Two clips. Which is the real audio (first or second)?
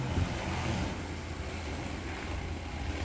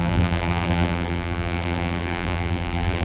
first